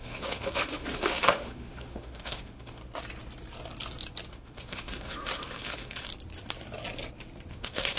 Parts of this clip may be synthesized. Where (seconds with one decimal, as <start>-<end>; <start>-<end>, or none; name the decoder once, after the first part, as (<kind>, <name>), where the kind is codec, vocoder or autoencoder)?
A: 0.0-2.8 (autoencoder, DAC-VAE); 4.3-6.1; 7.5-8.0